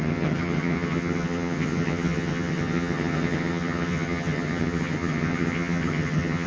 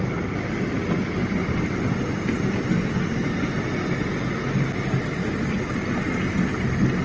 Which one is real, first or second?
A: second